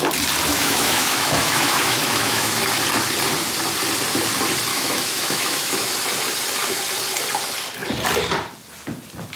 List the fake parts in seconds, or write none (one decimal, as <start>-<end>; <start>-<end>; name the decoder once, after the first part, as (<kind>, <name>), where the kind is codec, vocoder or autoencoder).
0.5-2.6 (autoencoder, DAC-VAE); 4.7-5.9